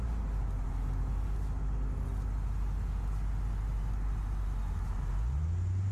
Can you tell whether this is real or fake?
real